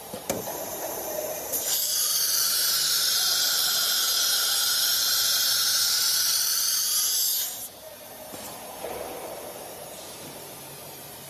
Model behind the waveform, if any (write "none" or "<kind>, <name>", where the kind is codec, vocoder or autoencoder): vocoder, BigVGAN v2